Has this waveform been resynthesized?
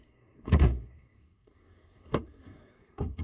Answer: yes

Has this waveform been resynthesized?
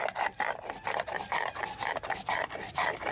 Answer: no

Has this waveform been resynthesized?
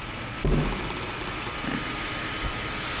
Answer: no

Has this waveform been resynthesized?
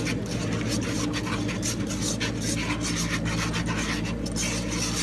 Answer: no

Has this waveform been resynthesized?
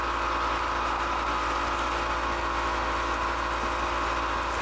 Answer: no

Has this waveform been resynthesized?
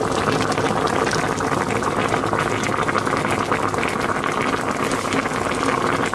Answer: no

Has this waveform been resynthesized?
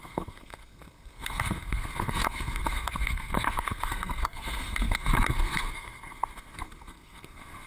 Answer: yes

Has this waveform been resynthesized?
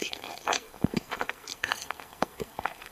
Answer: yes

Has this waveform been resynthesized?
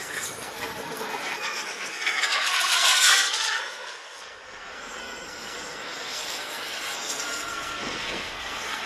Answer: yes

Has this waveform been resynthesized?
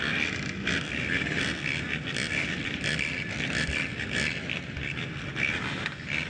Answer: no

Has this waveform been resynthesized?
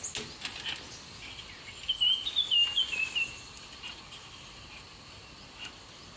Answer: no